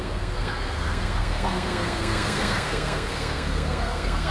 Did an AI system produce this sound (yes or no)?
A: yes